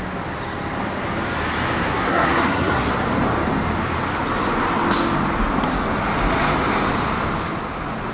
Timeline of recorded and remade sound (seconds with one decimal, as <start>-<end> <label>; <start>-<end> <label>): 0.0-1.8 recorded; 1.8-2.9 remade; 2.9-8.1 recorded

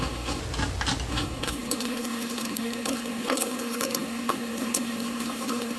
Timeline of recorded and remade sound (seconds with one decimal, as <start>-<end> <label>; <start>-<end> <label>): 0.0-0.4 remade; 0.4-1.1 recorded; 1.1-5.8 remade

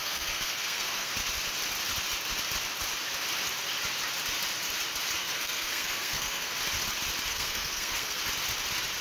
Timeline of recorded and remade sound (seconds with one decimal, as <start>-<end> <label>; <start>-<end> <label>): 0.0-1.1 remade; 1.1-5.2 recorded; 5.2-6.5 remade; 6.5-7.3 recorded; 7.3-8.2 remade; 8.2-9.0 recorded

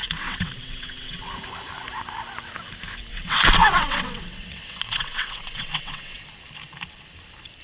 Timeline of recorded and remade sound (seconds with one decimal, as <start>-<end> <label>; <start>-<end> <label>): 0.0-1.2 remade; 1.2-3.1 recorded; 3.1-6.2 remade; 6.2-7.6 recorded